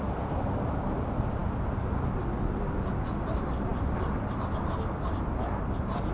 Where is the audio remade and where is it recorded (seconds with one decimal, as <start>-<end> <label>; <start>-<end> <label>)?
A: 0.0-6.1 recorded